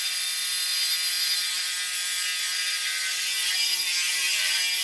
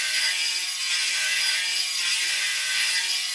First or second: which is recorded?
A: first